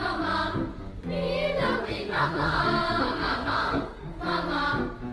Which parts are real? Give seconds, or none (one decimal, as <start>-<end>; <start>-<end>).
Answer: 0.0-1.8; 2.6-3.0; 4.2-5.1